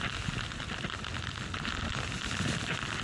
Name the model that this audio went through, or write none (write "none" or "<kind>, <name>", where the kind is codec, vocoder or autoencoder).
none